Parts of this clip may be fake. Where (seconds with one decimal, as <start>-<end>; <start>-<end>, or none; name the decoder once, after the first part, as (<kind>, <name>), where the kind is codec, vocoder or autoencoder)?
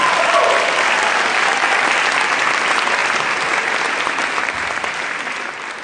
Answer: none